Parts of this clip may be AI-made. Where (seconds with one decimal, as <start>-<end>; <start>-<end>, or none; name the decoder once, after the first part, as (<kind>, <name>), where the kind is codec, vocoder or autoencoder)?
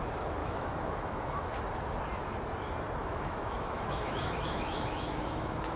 0.4-1.4 (autoencoder, DAC-VAE); 3.0-5.8